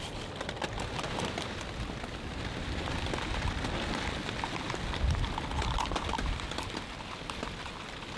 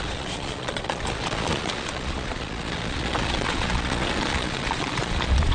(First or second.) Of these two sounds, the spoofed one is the second